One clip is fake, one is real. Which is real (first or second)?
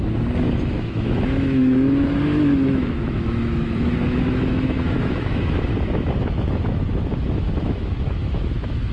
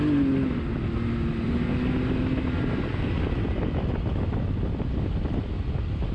second